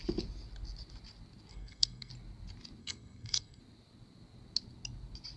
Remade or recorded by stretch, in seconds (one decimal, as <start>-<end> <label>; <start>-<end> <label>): 0.0-1.5 recorded; 1.5-2.1 remade; 2.1-2.8 recorded; 2.8-3.6 remade; 3.6-5.4 recorded